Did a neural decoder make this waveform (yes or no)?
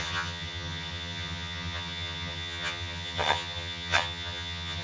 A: yes